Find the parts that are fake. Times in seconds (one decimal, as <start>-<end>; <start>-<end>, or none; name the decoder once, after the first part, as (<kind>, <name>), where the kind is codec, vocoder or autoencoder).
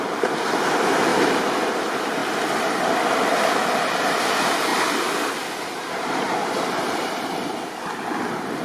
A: 0.0-1.1 (vocoder, BigVGAN v2); 1.8-2.2; 3.9-4.7; 5.9-7.5; 8.2-8.6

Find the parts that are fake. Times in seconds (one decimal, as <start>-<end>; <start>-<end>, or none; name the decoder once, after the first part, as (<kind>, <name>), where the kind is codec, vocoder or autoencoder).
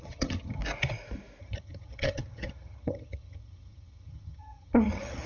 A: 0.0-0.6 (vocoder, HiFi-GAN); 1.4-5.3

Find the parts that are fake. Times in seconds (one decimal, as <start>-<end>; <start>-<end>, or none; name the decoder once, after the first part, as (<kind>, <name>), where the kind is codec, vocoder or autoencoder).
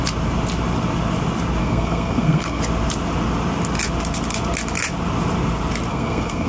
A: 1.6-2.6 (codec, SNAC); 5.9-6.5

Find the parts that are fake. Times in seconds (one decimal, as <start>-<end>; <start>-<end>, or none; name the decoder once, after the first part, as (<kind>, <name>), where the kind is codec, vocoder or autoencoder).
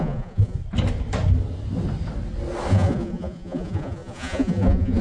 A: 0.0-0.6 (vocoder, Vocos); 2.7-5.0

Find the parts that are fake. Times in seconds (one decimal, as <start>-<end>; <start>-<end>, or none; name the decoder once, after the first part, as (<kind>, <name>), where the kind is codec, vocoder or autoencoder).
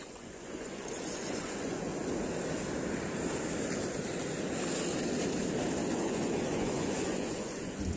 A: 0.0-1.9 (vocoder, Vocos); 5.9-8.0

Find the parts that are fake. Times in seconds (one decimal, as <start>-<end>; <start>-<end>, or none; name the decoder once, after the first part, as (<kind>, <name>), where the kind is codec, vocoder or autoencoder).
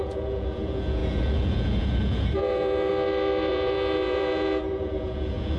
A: 0.0-2.9 (vocoder, Vocos); 3.5-5.6